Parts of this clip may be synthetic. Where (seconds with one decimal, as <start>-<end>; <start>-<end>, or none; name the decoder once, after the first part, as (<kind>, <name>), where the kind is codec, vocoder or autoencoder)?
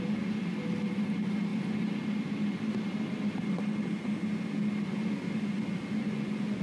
6.0-6.6 (vocoder, Vocos)